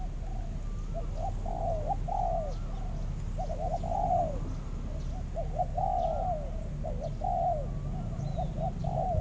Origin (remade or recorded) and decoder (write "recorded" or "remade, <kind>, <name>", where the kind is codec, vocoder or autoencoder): recorded